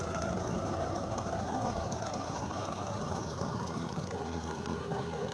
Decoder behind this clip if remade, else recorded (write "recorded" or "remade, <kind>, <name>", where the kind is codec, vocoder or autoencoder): remade, codec, SNAC